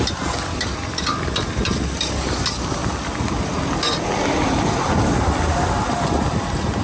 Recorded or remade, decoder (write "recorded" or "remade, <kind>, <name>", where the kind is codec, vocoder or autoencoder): recorded